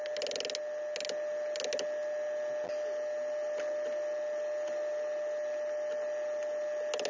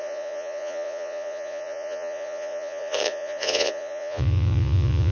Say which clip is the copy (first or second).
second